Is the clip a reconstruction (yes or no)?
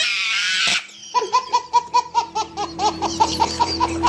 yes